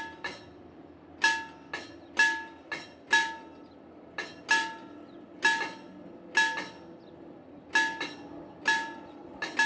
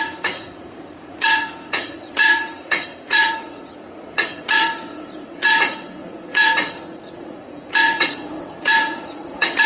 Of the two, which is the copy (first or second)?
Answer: second